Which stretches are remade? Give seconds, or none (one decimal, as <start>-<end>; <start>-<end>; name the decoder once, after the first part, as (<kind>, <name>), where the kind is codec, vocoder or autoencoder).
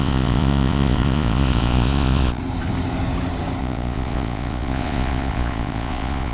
0.0-2.4 (vocoder, Vocos); 3.6-6.3